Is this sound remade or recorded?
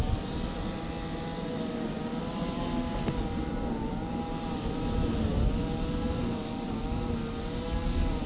recorded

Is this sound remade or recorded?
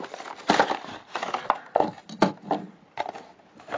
recorded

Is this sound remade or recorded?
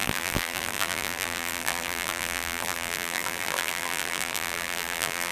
remade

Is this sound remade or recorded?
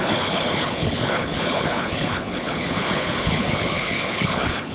remade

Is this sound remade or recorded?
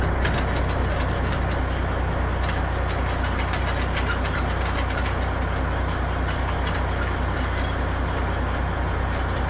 recorded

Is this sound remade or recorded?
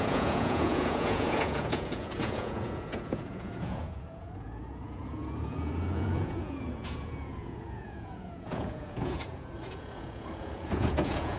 remade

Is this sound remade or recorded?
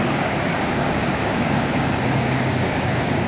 remade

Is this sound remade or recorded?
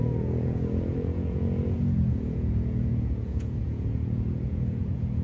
remade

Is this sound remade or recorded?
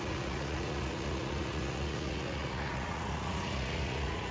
remade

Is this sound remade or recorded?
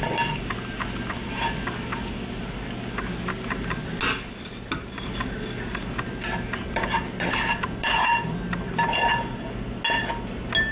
recorded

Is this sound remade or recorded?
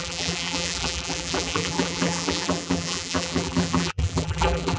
remade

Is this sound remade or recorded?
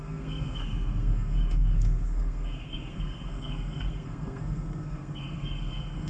remade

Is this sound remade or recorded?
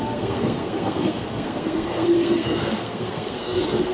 remade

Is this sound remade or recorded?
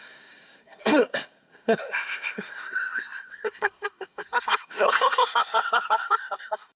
remade